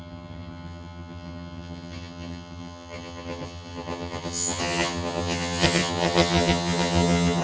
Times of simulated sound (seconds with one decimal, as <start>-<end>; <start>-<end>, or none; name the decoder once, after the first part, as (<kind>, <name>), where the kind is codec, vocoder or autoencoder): 0.0-7.4 (vocoder, HiFi-GAN)